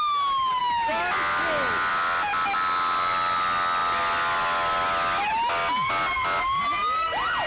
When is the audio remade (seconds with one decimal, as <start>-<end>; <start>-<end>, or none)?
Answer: none